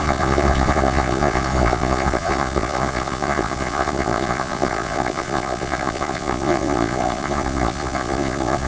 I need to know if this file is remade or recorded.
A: remade